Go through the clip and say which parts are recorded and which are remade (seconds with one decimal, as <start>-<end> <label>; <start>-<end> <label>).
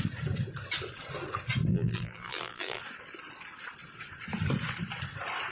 0.0-1.7 recorded; 1.7-2.8 remade; 2.8-5.5 recorded